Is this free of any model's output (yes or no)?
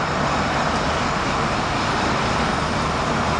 yes